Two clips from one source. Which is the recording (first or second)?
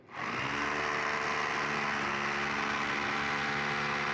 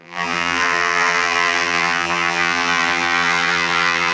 first